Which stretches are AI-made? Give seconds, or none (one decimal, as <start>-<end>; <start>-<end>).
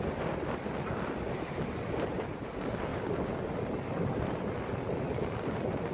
none